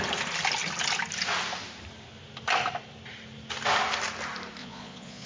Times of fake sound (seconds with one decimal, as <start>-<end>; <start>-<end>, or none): 4.6-5.3